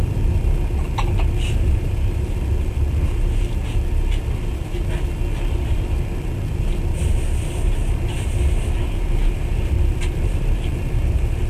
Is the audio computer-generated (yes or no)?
no